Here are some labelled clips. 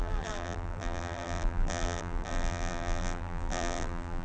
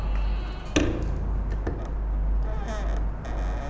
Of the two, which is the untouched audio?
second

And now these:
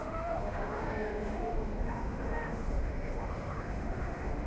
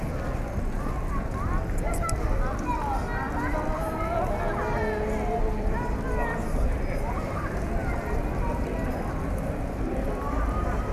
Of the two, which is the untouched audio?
second